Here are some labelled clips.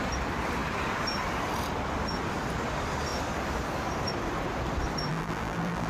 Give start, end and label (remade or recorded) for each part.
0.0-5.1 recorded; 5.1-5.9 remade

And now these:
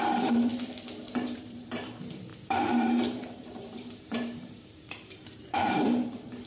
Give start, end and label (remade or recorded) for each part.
0.0-0.5 remade; 0.5-1.0 recorded; 1.0-6.5 remade

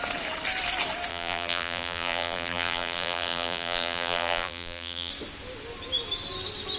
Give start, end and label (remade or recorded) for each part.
0.0-1.1 recorded; 1.1-5.1 remade; 5.1-6.8 recorded

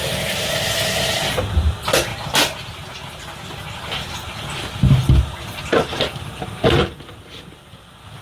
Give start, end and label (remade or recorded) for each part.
0.0-8.2 recorded

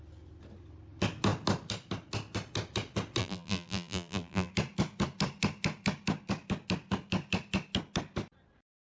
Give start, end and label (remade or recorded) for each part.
0.0-3.2 recorded; 3.2-4.5 remade; 4.5-9.0 recorded